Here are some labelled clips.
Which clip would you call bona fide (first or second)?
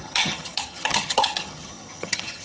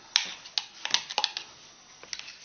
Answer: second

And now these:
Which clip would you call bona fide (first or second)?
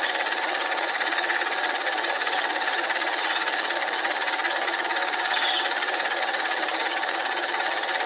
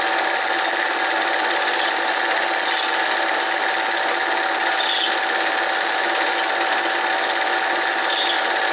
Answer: second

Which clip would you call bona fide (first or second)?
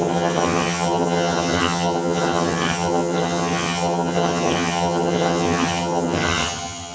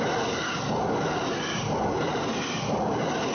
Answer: second